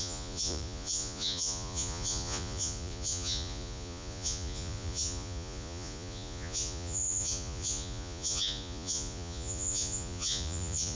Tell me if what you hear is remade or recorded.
remade